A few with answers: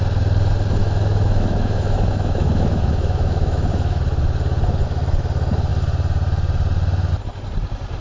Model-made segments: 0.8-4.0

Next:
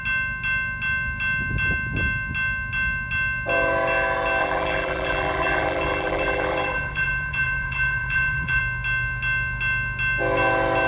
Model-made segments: 4.4-8.6

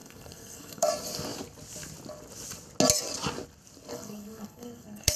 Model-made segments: 0.0-0.9; 3.9-5.2

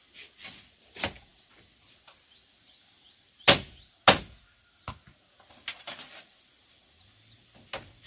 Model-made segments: none

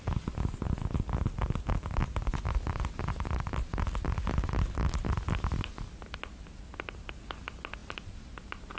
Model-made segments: none

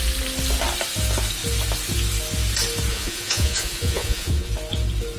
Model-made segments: 2.9-4.5